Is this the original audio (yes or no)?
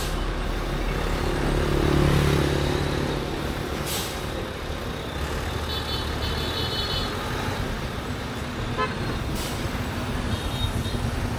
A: yes